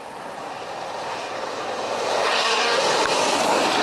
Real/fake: real